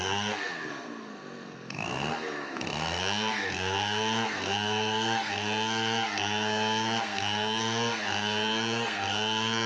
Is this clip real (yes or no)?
no